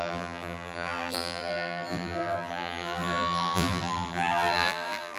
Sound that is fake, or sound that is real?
fake